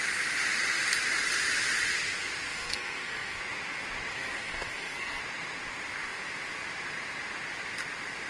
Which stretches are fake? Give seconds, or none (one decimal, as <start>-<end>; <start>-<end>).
2.5-3.4; 4.1-5.2